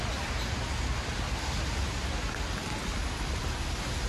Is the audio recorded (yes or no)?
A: yes